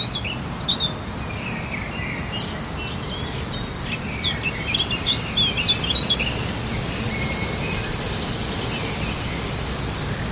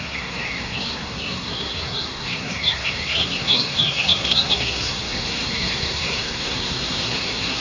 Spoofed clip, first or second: second